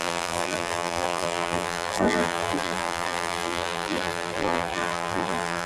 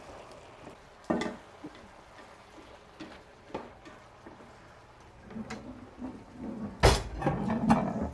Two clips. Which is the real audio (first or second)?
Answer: second